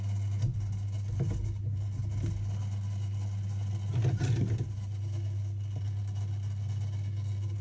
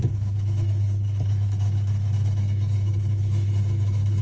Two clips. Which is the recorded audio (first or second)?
first